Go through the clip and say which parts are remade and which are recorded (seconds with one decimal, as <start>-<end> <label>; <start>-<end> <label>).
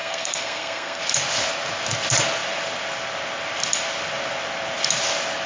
0.0-1.0 remade; 1.0-5.5 recorded